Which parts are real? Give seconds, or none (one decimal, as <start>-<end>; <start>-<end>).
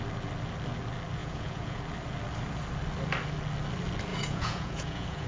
0.0-1.2; 1.8-4.1